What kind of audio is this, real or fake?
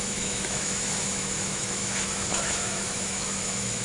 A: fake